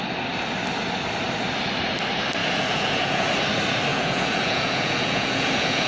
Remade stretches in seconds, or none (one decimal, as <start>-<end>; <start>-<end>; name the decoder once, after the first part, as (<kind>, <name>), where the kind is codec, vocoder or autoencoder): 2.4-3.3 (vocoder, Vocos); 3.9-5.9